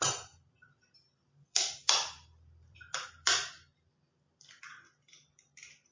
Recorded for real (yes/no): no